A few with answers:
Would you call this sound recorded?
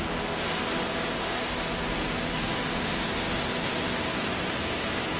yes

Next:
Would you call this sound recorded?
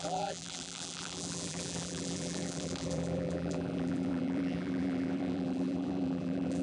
no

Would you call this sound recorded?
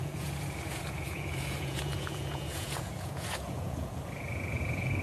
no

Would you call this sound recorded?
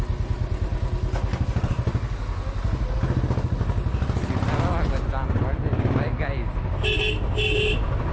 yes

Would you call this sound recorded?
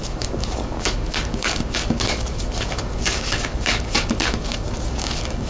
no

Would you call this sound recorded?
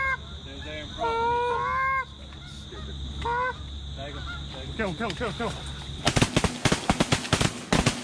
yes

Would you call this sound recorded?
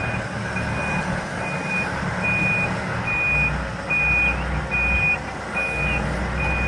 yes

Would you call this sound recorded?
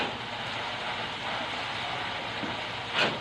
yes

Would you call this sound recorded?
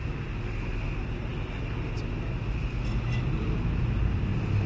yes